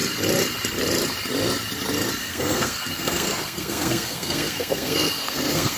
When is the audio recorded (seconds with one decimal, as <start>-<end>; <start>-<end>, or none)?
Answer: 0.0-2.2